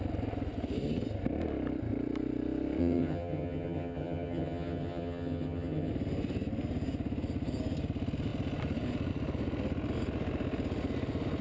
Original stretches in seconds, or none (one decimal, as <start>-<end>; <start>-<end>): 0.0-2.8; 5.9-11.4